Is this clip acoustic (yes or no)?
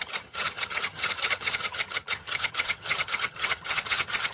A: no